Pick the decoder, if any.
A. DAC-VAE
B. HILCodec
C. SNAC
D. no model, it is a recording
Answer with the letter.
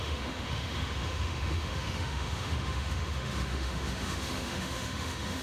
A